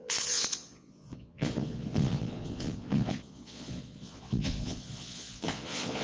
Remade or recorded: remade